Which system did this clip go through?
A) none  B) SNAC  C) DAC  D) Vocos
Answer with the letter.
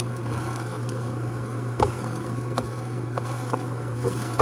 B